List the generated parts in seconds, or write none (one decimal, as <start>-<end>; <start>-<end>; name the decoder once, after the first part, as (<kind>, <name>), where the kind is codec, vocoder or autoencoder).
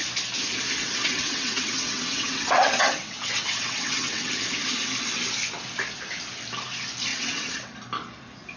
0.8-4.3 (vocoder, WaveNeXt); 7.1-7.7